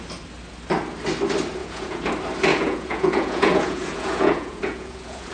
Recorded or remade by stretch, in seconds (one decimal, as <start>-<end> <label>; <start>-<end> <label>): 0.0-1.6 recorded; 1.6-2.1 remade; 2.1-2.5 recorded; 2.5-5.3 remade